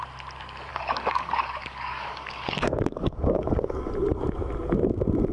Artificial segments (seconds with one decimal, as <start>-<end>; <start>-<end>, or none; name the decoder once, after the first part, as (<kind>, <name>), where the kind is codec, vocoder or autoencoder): 0.7-3.9 (codec, DAC)